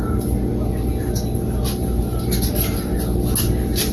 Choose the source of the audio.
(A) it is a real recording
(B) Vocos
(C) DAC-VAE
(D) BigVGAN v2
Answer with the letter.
A